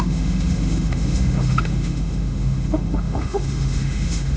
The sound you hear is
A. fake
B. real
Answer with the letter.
A